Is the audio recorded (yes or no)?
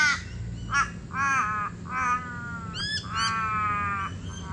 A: yes